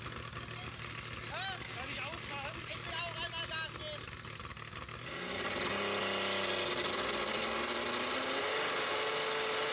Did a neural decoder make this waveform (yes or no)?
no